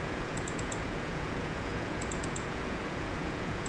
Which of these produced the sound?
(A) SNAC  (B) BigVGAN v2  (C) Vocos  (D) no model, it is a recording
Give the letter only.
C